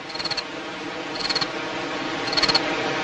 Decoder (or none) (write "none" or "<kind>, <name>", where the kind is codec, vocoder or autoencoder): none